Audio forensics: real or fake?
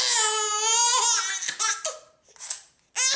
real